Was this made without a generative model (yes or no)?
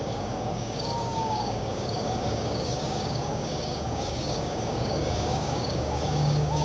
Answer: no